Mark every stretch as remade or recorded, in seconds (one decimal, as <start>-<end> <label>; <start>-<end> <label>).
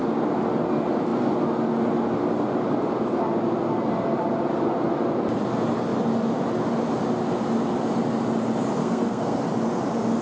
0.0-8.8 recorded; 8.8-9.4 remade; 9.4-10.2 recorded